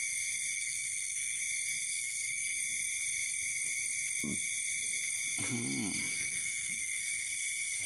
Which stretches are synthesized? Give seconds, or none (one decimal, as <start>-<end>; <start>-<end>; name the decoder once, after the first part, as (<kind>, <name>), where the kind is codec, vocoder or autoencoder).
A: 0.5-1.4 (codec, SNAC); 1.9-2.6; 6.0-7.9